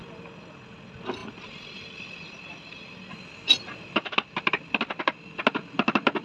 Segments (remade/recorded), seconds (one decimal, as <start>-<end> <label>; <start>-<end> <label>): 0.0-6.2 recorded